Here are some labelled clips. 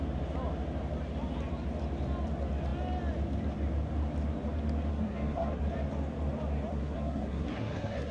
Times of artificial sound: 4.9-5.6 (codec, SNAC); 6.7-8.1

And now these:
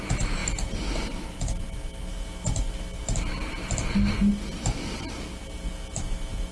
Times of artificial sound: none

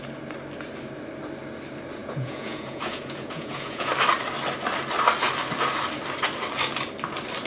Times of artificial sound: 2.0-3.9 (vocoder, Vocos)

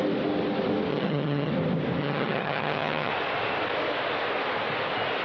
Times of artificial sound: 0.9-1.5 (vocoder, HiFi-GAN); 2.0-3.1

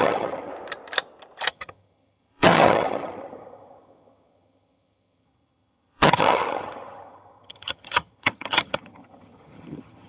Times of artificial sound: 0.0-0.5 (vocoder, HiFi-GAN); 1.5-10.1

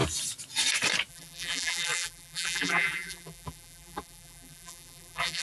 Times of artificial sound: 1.1-5.4 (vocoder, BigVGAN v2)